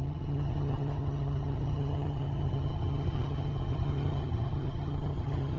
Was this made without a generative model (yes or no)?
no